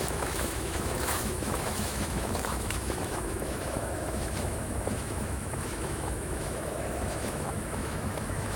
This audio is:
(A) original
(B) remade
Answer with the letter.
B